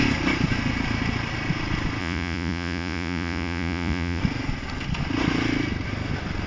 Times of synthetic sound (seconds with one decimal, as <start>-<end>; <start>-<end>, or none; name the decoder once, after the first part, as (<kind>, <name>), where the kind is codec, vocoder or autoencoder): 2.0-4.2 (vocoder, Vocos)